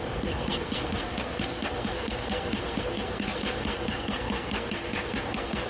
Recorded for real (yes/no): no